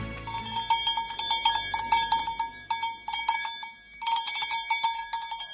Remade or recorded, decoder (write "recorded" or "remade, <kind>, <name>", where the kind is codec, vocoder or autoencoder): recorded